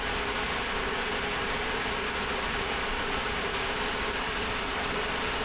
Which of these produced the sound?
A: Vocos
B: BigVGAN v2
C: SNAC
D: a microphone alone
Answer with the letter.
D